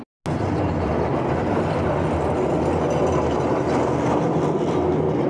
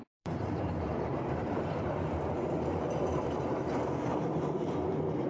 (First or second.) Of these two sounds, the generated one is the second